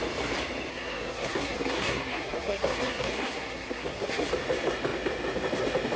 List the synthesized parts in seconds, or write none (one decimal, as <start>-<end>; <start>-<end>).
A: 0.7-4.3